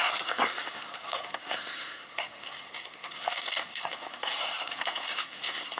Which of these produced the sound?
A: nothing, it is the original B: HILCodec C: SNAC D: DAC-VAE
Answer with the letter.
C